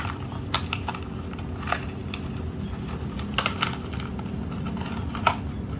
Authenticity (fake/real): real